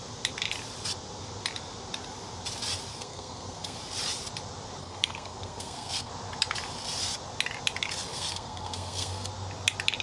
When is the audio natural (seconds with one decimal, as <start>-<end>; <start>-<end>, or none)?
0.0-2.9; 3.8-4.8; 6.1-8.1; 9.3-10.0